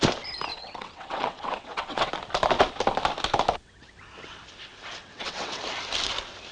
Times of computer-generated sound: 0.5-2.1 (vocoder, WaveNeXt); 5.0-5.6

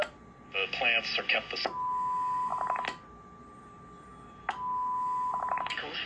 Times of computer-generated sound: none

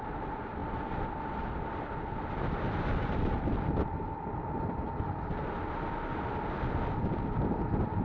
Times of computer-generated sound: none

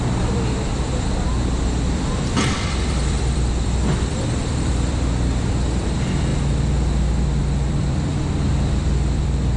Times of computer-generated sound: 0.0-6.3 (vocoder, BigVGAN v2); 7.4-9.6

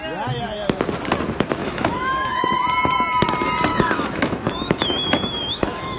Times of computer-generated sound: 1.6-2.4 (autoencoder, DAC-VAE); 3.7-6.0